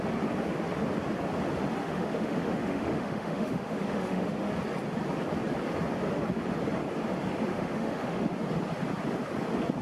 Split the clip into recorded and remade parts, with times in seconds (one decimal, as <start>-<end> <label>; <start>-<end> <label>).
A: 0.0-1.8 recorded; 1.8-4.5 remade; 4.5-7.5 recorded; 7.5-8.3 remade; 8.3-9.8 recorded